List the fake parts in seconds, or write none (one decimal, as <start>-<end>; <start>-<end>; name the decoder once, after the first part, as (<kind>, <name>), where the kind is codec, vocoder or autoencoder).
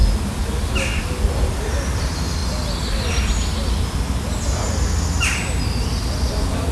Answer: none